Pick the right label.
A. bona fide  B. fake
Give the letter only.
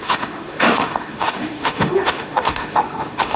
B